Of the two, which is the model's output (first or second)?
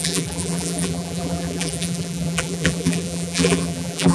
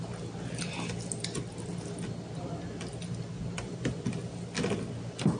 first